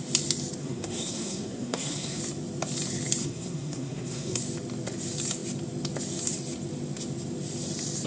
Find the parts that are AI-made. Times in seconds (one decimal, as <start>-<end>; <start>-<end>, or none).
0.6-2.2; 3.2-4.4